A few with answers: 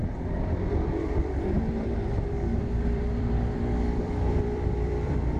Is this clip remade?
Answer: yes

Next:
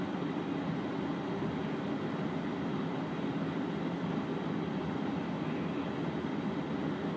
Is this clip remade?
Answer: no